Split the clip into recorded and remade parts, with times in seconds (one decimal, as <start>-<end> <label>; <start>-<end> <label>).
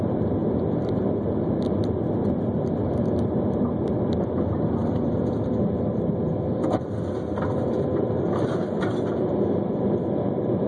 0.0-10.7 recorded